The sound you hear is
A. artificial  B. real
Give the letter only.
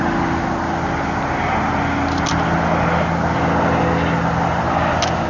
B